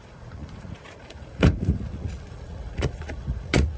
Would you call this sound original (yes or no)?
no